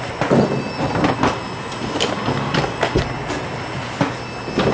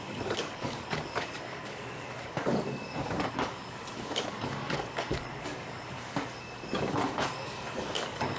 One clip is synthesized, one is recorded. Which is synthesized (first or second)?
second